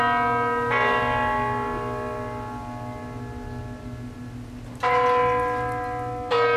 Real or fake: real